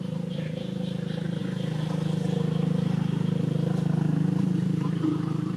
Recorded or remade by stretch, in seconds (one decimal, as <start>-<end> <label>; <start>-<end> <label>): 0.0-1.4 remade; 1.4-4.4 recorded; 4.4-5.6 remade